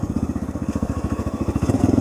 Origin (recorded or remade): remade